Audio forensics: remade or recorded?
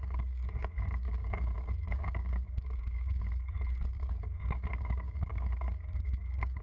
remade